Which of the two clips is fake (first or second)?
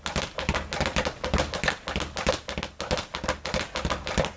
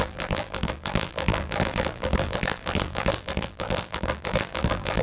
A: second